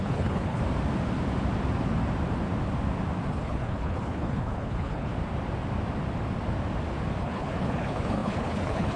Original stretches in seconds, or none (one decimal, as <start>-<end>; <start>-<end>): 0.6-3.3; 5.1-7.2